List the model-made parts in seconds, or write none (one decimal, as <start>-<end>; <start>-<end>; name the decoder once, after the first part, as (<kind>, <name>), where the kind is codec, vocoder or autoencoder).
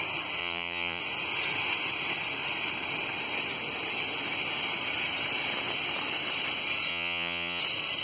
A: 0.4-1.0 (vocoder, Vocos); 6.9-7.6